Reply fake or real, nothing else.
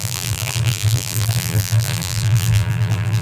fake